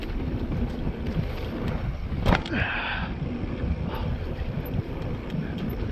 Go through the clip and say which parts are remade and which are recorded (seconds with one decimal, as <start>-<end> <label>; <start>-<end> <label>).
0.0-3.5 remade; 3.5-4.1 recorded; 4.1-5.3 remade; 5.3-5.9 recorded